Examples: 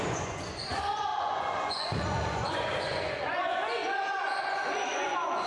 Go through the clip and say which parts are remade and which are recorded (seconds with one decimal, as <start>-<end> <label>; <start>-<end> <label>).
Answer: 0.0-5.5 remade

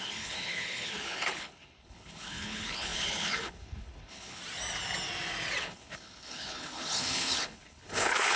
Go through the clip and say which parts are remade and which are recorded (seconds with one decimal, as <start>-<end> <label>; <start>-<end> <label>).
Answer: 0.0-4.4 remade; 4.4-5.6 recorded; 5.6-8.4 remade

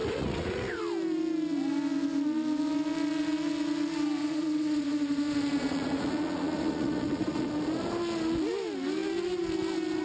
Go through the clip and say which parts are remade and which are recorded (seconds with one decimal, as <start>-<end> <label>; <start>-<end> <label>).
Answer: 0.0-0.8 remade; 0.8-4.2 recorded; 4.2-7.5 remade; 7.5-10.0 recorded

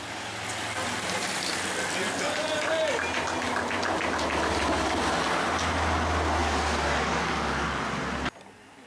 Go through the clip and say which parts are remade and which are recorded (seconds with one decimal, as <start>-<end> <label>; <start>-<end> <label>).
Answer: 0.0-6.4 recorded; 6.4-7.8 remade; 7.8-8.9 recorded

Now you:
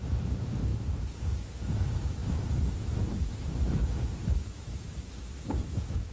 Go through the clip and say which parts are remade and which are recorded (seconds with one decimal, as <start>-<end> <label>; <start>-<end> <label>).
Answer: 0.0-6.1 remade